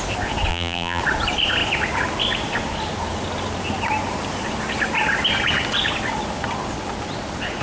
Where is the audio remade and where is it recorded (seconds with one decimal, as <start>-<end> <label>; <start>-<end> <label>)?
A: 0.0-0.5 recorded; 0.5-1.0 remade; 1.0-7.6 recorded

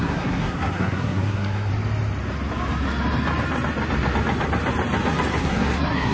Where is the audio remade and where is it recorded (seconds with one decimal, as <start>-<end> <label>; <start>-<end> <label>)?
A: 0.0-1.7 remade; 1.7-5.4 recorded; 5.4-6.1 remade

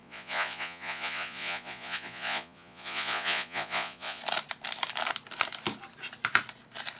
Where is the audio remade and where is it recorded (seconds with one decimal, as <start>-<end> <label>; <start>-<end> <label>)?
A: 0.0-4.2 remade; 4.2-7.0 recorded

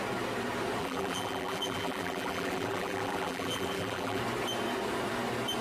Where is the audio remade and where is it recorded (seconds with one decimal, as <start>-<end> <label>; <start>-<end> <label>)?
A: 0.0-0.8 recorded; 0.8-4.2 remade; 4.2-5.6 recorded

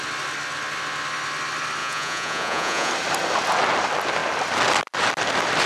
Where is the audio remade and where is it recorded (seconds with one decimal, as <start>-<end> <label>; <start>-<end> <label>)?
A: 0.0-1.8 recorded; 1.8-2.9 remade; 2.9-5.7 recorded

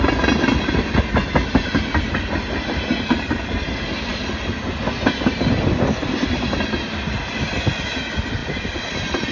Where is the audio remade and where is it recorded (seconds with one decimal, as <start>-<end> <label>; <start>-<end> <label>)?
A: 0.0-9.3 recorded

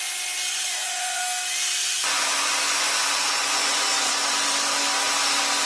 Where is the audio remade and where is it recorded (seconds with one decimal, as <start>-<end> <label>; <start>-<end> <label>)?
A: 0.0-0.5 recorded; 0.5-1.2 remade; 1.2-1.8 recorded; 1.8-4.2 remade; 4.2-5.7 recorded

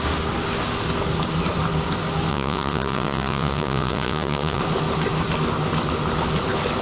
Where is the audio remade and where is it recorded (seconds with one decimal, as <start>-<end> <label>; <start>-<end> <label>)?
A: 0.0-2.3 recorded; 2.3-4.6 remade; 4.6-6.8 recorded